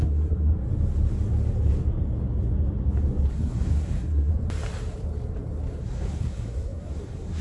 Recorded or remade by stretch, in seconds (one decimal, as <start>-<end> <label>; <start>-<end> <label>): 0.0-0.5 remade; 0.5-3.3 recorded; 3.3-4.3 remade; 4.3-5.8 recorded; 5.8-7.4 remade

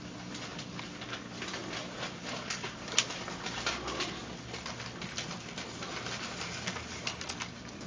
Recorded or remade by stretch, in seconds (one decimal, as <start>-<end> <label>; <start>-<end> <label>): 0.0-7.9 recorded

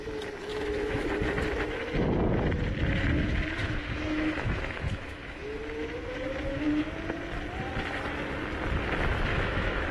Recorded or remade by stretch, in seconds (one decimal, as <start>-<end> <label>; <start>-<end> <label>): 0.0-0.5 recorded; 0.5-1.1 remade; 1.1-3.6 recorded; 3.6-6.9 remade; 6.9-9.3 recorded; 9.3-9.9 remade